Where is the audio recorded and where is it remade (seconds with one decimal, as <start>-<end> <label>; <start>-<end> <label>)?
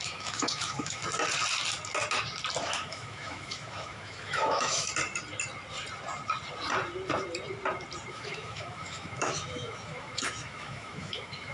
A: 0.0-1.0 remade; 1.0-2.6 recorded; 2.6-4.9 remade; 4.9-8.1 recorded; 8.1-11.5 remade